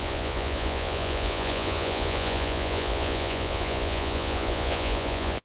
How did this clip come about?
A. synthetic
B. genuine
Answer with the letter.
A